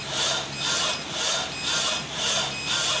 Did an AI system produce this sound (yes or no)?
no